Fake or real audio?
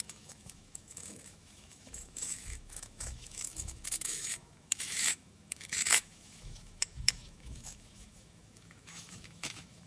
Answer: fake